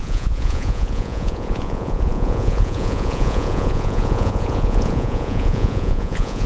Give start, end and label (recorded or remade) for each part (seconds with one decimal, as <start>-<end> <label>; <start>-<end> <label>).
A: 0.0-6.5 remade